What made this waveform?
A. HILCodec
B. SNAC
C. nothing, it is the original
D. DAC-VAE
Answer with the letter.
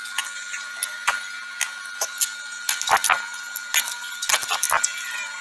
C